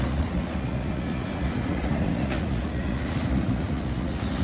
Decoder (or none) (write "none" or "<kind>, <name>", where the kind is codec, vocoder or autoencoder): vocoder, Vocos